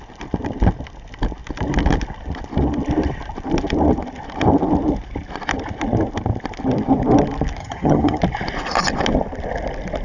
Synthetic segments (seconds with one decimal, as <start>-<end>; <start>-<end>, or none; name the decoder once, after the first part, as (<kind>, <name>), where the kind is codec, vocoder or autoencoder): 7.6-8.2 (vocoder, HiFi-GAN)